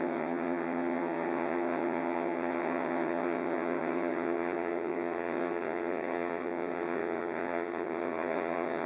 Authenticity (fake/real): fake